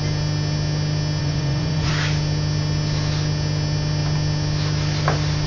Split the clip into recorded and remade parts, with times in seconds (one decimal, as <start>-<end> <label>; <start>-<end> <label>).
0.0-1.2 recorded; 1.2-1.9 remade; 1.9-5.5 recorded